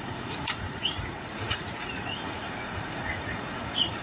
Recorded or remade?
remade